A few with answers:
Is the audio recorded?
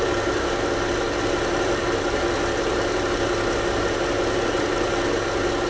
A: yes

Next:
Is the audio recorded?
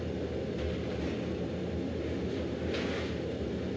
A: yes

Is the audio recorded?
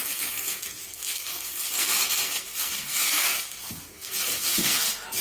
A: no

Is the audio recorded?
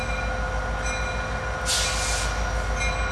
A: yes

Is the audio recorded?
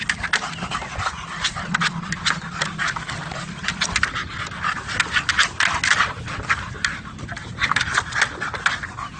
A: yes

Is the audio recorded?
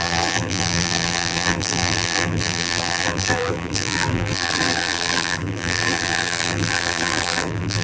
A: no